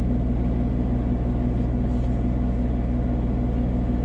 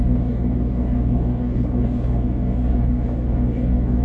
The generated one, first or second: second